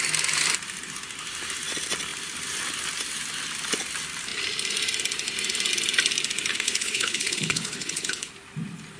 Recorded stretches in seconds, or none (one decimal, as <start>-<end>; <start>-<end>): 0.0-6.5; 8.3-9.0